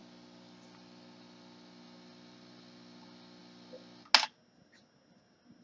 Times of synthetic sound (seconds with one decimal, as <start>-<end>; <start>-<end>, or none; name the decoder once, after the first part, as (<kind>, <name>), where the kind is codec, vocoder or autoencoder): none